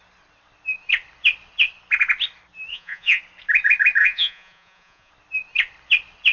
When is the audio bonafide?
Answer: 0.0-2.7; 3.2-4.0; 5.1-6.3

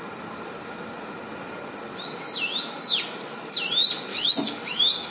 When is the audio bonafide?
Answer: 0.0-4.1

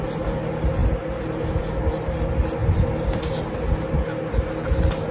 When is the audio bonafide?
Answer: 0.0-5.1

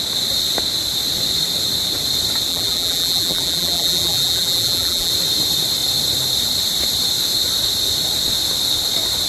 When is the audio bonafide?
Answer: 0.0-2.5; 5.1-9.3